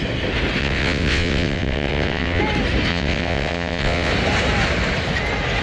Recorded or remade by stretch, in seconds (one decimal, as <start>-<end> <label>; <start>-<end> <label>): 0.0-0.6 recorded; 0.6-2.4 remade; 2.4-2.9 recorded; 2.9-4.1 remade; 4.1-5.6 recorded